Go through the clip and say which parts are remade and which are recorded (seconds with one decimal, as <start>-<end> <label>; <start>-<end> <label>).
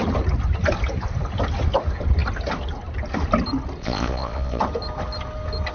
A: 0.0-3.8 recorded; 3.8-4.6 remade; 4.6-5.7 recorded